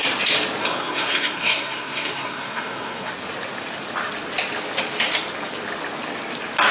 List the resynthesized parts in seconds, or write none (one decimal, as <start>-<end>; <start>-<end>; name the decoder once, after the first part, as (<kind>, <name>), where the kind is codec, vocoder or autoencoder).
0.6-3.1 (codec, SNAC)

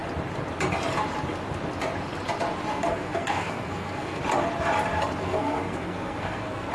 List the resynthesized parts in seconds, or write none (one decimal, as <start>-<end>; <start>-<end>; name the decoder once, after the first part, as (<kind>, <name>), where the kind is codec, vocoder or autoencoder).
2.7-4.2 (codec, SNAC); 5.2-6.7

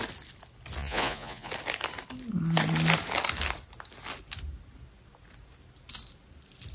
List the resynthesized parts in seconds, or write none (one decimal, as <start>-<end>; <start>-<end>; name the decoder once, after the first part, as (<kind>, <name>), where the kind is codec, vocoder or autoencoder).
0.8-1.5 (vocoder, Vocos)